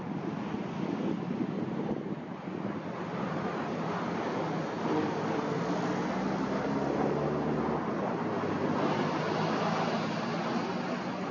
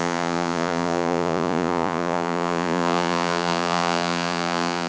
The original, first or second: first